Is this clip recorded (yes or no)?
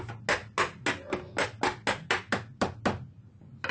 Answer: yes